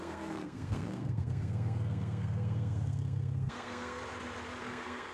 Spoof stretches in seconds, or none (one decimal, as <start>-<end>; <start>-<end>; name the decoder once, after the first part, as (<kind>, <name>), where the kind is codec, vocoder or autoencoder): 0.0-4.0 (codec, SNAC); 4.6-5.1